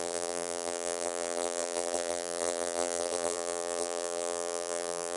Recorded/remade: remade